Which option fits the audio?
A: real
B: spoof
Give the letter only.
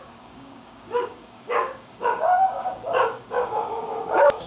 B